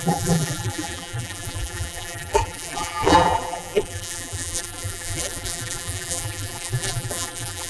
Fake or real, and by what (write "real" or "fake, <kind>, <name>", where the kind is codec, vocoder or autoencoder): fake, vocoder, BigVGAN v2